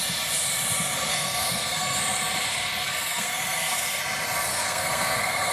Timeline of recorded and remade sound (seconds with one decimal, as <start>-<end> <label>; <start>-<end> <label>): 0.0-1.1 recorded; 1.1-2.0 remade; 2.0-2.5 recorded; 2.5-4.0 remade; 4.0-4.5 recorded; 4.5-5.5 remade